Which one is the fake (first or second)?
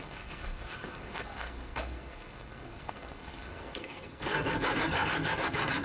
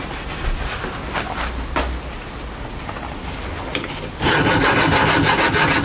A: first